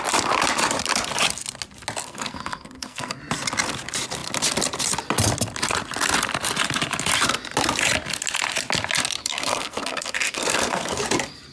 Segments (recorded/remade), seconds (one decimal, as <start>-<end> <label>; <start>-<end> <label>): 0.0-2.0 recorded; 2.0-3.2 remade; 3.2-9.2 recorded; 9.2-11.0 remade; 11.0-11.5 recorded